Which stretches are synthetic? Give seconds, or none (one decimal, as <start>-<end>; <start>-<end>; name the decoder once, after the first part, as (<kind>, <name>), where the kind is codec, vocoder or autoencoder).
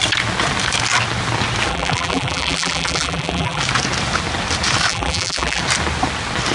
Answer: 1.7-3.6 (vocoder, BigVGAN v2); 4.9-5.6